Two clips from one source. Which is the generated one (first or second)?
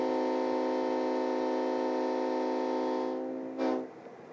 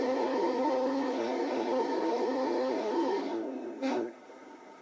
second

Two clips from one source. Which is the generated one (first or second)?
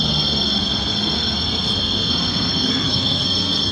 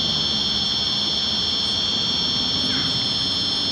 first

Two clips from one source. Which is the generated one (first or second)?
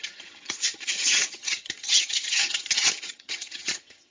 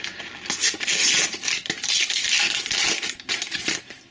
first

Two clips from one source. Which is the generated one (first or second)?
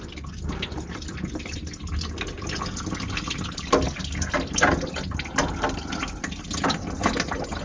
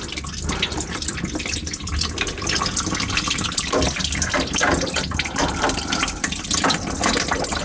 second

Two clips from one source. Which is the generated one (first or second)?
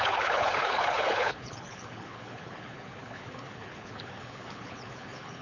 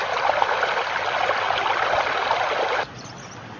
first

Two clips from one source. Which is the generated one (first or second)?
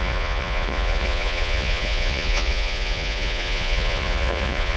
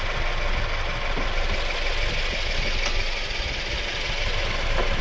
first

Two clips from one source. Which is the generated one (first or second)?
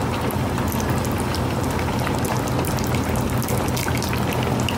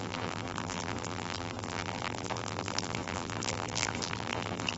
second